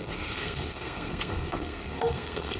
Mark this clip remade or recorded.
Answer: remade